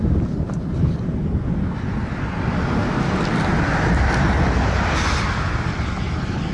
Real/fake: real